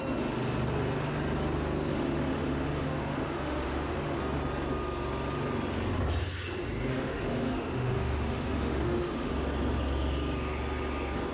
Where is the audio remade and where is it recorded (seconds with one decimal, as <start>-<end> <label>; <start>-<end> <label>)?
0.0-1.9 recorded; 1.9-4.2 remade; 4.2-6.9 recorded; 6.9-9.3 remade; 9.3-11.3 recorded